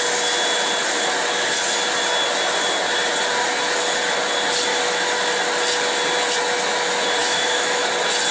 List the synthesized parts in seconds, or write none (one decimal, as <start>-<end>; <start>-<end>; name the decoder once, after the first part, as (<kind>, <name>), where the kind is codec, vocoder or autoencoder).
4.7-5.3 (autoencoder, DAC-VAE); 7.2-7.9